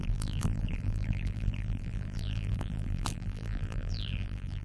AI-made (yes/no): yes